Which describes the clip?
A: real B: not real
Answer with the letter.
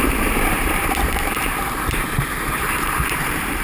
B